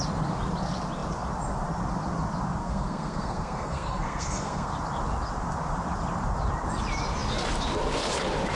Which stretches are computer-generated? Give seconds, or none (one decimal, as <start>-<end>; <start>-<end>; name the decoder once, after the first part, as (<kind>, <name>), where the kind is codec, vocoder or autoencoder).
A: 2.6-4.7 (codec, SNAC)